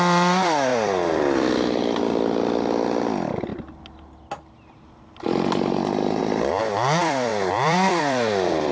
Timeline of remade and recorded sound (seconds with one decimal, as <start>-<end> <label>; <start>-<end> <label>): 0.0-3.5 remade; 3.5-6.2 recorded; 6.2-8.7 remade